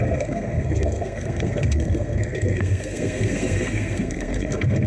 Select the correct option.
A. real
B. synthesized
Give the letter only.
B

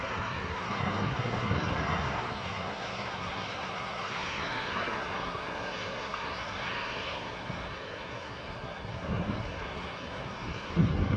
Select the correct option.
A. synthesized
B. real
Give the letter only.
A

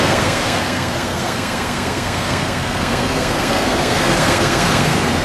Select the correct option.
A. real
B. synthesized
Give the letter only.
B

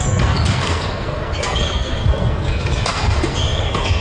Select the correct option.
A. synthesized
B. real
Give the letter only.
A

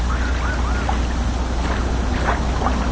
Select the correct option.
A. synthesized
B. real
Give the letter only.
B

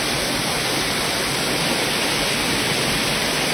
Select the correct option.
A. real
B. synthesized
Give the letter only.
A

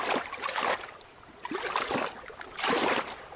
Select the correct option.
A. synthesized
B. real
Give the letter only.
B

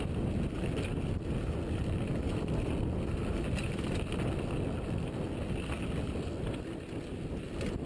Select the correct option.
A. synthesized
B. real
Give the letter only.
B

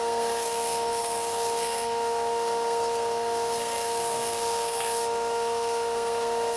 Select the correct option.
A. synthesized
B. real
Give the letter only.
A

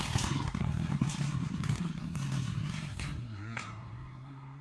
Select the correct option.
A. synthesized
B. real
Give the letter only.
A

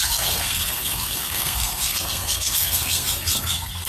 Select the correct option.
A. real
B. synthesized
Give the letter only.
B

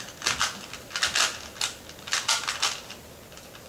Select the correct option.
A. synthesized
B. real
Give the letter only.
B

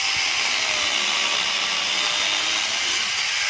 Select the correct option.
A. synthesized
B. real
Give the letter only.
B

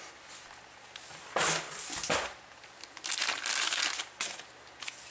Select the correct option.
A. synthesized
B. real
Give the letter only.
B